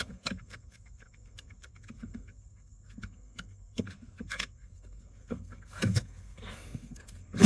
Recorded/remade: remade